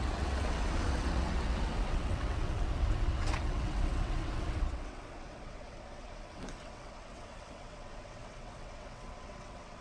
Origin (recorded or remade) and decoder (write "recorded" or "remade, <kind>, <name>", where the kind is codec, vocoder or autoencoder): remade, vocoder, WaveNeXt